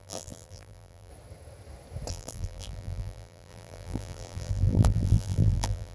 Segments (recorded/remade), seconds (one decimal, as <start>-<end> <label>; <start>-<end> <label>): 0.0-1.1 remade; 1.1-2.1 recorded; 2.1-5.9 remade

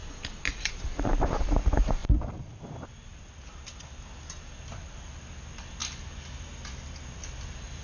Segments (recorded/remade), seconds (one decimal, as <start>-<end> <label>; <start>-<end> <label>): 0.0-2.0 recorded; 2.0-2.6 remade; 2.6-7.8 recorded

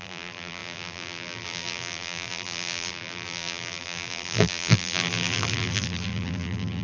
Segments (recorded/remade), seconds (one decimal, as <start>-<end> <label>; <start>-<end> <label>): 0.0-6.8 remade

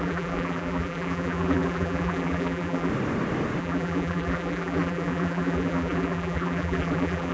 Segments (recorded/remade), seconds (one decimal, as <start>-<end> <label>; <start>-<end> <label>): 0.0-2.9 remade; 2.9-3.6 recorded; 3.6-7.3 remade

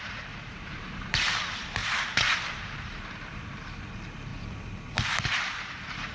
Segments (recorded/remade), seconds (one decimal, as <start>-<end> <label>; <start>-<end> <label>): 0.0-4.3 remade; 4.3-4.9 recorded; 4.9-6.1 remade

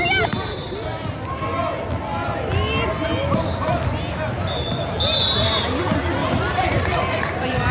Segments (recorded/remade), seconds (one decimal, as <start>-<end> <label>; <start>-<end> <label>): 0.0-6.2 recorded; 6.2-7.7 remade

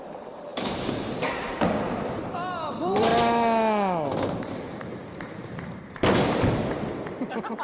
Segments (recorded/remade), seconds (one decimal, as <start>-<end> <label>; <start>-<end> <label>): 0.0-3.1 remade; 3.1-4.4 recorded; 4.4-7.6 remade